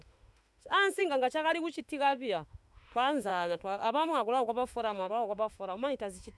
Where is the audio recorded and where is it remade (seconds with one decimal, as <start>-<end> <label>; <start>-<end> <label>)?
0.0-1.0 remade; 1.0-1.8 recorded; 1.8-6.4 remade